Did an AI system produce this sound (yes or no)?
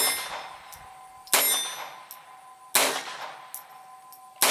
no